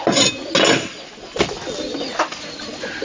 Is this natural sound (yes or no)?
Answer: yes